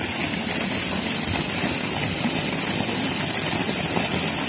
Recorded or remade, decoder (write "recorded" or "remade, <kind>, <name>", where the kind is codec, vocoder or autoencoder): recorded